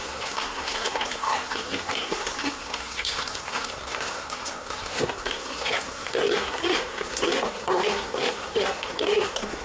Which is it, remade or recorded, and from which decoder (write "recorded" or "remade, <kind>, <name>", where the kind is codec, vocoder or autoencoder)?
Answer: remade, codec, SNAC